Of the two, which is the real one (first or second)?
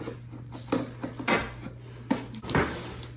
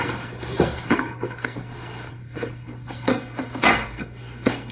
first